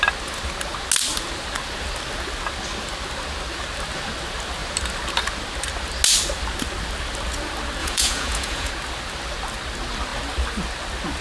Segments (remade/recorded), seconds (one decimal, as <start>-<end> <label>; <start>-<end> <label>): 0.0-7.8 recorded; 7.8-8.7 remade; 8.7-11.2 recorded